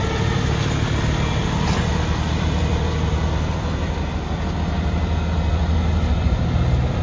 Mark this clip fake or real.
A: real